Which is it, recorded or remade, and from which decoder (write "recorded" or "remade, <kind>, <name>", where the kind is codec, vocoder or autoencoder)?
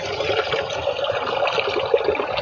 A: recorded